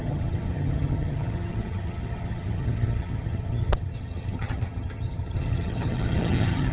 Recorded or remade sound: remade